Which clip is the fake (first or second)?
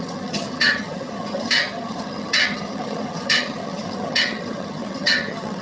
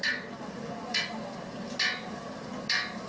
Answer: first